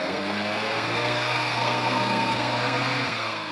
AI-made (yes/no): yes